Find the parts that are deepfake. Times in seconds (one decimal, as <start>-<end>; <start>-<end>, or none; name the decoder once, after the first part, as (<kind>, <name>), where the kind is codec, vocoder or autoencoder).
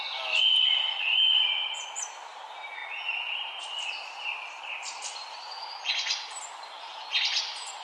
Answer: none